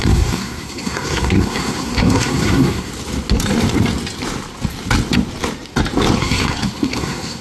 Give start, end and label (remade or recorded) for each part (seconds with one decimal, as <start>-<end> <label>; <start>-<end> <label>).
0.0-2.9 remade; 2.9-6.2 recorded; 6.2-7.4 remade